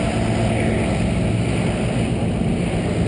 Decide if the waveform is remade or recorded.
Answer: recorded